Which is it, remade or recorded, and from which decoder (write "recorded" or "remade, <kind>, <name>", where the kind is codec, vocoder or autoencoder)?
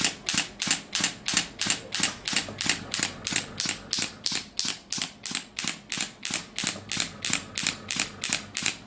recorded